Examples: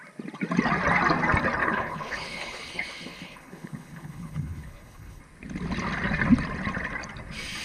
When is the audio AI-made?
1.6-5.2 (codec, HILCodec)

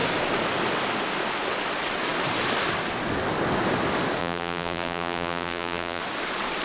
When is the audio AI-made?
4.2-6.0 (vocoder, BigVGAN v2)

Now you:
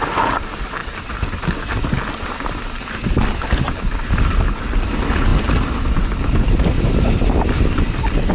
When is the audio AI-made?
none

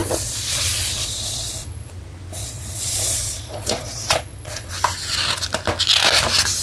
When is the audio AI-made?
0.0-1.9 (vocoder, Vocos); 2.4-4.7